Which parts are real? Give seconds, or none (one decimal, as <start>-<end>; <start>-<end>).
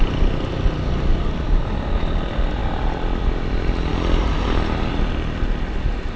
0.0-6.2